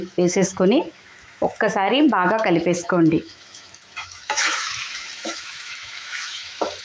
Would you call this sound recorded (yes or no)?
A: no